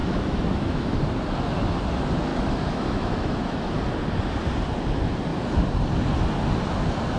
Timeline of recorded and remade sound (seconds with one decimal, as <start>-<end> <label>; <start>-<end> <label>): 0.0-1.0 remade; 1.0-2.3 recorded; 2.3-3.7 remade; 3.7-7.2 recorded

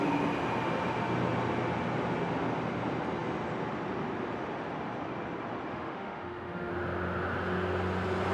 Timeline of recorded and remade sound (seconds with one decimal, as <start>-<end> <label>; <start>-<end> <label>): 0.0-5.7 recorded; 5.7-6.7 remade; 6.7-8.3 recorded